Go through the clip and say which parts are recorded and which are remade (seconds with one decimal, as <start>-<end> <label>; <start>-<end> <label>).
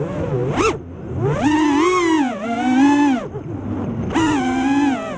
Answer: 0.0-5.2 recorded